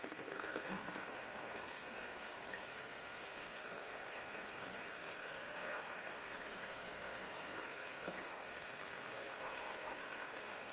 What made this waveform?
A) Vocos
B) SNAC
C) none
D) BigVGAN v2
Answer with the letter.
B